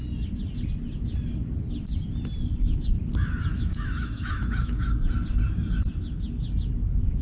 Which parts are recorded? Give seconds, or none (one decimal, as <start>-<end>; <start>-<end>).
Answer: 0.0-3.5; 5.0-7.2